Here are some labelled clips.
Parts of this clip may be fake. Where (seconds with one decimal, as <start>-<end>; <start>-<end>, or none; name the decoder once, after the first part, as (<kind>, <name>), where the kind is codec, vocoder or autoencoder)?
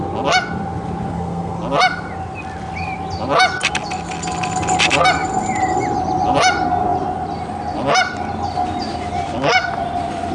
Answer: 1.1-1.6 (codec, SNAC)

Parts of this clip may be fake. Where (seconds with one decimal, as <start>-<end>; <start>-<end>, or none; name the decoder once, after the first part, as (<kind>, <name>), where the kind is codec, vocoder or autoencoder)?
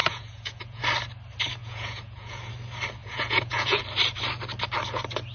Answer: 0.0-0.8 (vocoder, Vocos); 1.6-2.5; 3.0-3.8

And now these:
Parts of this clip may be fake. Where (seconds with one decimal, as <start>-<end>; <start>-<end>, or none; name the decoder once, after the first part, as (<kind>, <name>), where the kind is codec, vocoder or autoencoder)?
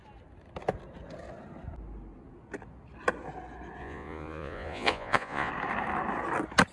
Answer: 3.8-5.5 (vocoder, Vocos)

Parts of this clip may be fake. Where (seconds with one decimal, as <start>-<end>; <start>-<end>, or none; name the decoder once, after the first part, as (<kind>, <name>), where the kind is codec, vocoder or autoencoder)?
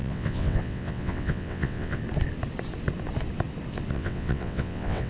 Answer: 0.0-2.0 (vocoder, WaveNeXt); 3.9-5.1